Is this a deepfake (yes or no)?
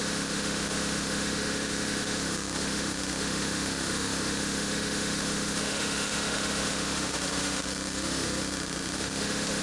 yes